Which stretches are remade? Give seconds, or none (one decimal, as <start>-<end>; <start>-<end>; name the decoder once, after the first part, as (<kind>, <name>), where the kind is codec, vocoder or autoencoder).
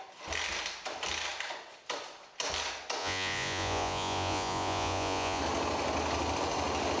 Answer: 3.0-5.4 (vocoder, Vocos)